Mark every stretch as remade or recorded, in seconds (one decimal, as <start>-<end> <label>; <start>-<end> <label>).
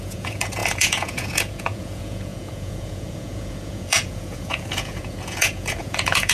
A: 0.0-6.3 remade